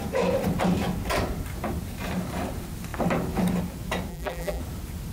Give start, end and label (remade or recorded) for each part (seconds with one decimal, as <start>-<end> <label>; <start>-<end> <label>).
0.0-4.1 recorded; 4.1-4.6 remade; 4.6-5.1 recorded